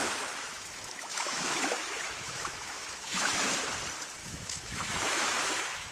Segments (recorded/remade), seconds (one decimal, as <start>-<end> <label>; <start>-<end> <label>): 0.0-3.5 remade; 3.5-4.2 recorded; 4.2-5.9 remade